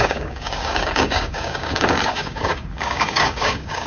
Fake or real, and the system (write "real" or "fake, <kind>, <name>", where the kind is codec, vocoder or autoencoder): fake, codec, DAC